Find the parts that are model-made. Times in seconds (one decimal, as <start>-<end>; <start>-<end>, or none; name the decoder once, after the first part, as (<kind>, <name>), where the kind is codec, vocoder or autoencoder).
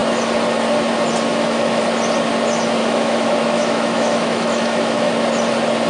1.3-1.8 (autoencoder, DAC-VAE); 2.8-5.1